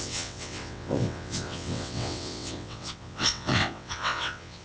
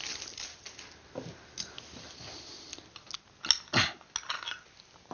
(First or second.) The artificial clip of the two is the first